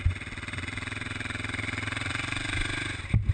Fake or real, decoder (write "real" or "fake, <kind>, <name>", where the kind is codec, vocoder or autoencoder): real